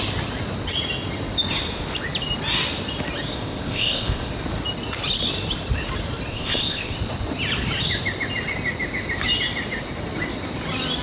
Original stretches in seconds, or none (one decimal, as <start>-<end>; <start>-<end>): 0.0-3.3; 4.3-6.3; 6.9-11.0